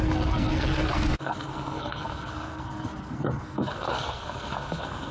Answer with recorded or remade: remade